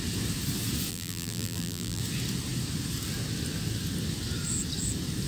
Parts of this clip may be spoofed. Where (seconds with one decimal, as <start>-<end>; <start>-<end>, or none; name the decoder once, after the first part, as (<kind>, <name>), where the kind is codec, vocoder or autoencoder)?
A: 0.9-2.0 (vocoder, BigVGAN v2)